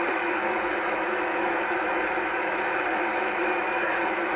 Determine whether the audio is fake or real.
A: fake